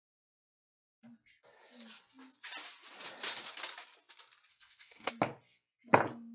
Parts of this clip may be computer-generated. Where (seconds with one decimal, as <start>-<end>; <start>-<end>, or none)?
4.5-5.1